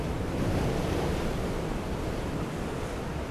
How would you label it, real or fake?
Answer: real